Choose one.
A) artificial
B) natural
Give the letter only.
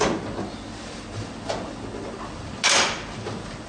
B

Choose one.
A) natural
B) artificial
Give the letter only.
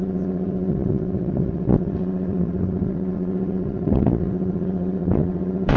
B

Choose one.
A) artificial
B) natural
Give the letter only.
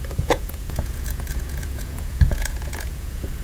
A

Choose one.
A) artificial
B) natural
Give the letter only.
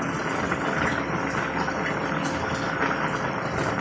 B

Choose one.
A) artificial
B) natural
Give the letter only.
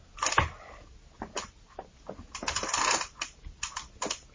B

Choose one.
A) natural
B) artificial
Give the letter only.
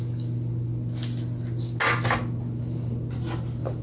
A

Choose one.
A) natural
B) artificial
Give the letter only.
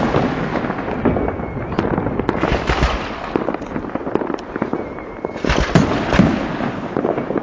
A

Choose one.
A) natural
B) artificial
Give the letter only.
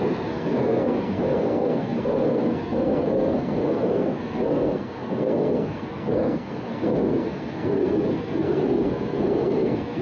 B